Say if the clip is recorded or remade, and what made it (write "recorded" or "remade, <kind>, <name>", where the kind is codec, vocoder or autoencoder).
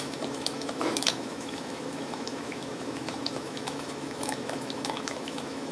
remade, autoencoder, DAC-VAE